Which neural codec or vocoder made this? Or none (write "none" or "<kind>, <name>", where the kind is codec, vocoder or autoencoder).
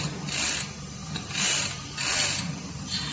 none